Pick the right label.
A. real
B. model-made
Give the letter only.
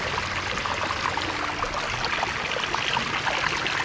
A